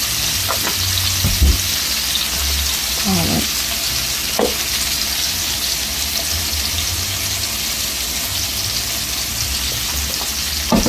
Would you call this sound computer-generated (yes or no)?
no